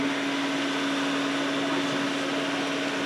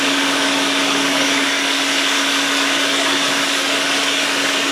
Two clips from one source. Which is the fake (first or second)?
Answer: second